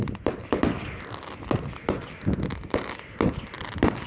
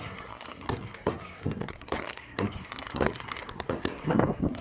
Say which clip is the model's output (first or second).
second